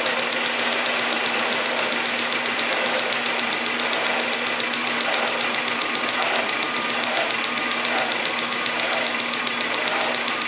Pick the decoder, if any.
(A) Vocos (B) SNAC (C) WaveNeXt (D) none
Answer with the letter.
D